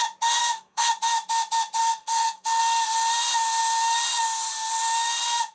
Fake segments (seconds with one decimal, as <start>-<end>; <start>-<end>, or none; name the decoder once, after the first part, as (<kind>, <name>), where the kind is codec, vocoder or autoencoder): 0.4-0.9 (codec, SNAC); 1.8-2.6